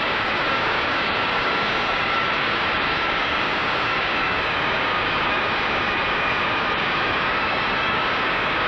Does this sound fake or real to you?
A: fake